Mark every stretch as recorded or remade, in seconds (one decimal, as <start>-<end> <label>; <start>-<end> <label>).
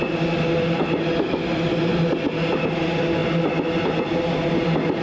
0.0-5.0 recorded